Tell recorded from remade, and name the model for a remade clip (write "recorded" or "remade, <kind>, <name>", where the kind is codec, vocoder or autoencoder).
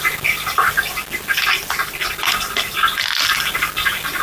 recorded